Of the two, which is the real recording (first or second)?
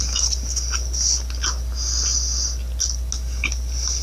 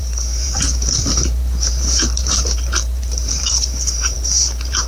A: first